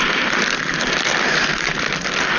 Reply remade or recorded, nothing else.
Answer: recorded